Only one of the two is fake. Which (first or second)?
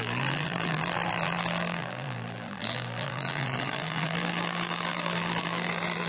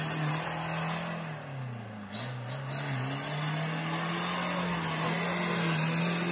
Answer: first